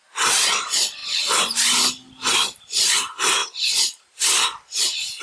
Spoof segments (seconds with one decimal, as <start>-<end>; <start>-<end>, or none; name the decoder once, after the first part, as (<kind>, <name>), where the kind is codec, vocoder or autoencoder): none